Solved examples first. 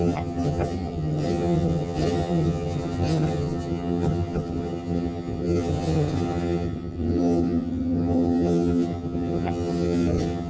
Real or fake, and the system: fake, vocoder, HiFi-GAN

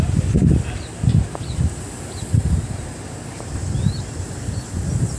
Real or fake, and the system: real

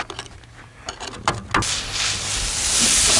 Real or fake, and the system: real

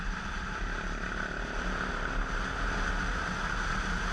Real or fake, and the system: real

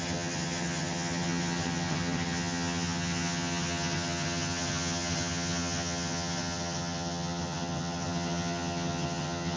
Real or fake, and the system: fake, vocoder, HiFi-GAN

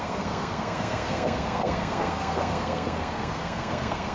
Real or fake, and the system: fake, codec, SNAC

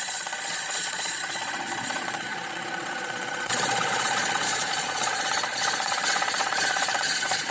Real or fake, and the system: fake, vocoder, Vocos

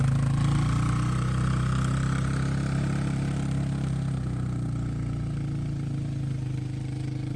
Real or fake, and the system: real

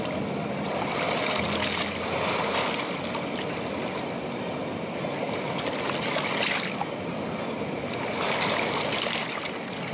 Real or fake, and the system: real